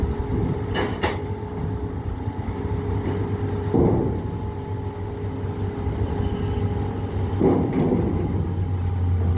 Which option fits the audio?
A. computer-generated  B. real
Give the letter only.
B